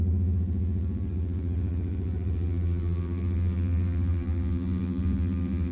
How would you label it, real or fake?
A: fake